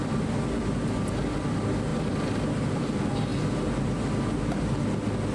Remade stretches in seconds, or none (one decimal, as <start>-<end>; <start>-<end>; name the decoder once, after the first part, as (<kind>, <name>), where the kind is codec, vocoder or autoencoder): none